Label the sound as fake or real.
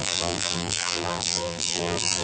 fake